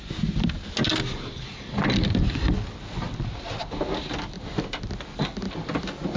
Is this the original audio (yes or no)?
yes